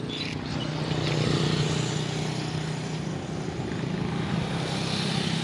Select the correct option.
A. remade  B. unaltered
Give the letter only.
B